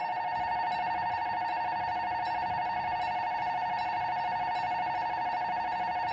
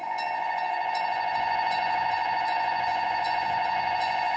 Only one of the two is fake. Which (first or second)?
second